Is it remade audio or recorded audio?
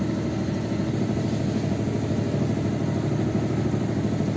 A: recorded